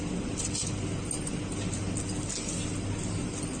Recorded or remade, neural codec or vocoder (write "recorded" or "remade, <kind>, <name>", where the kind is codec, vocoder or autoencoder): recorded